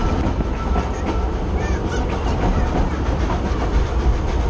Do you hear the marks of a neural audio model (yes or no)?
no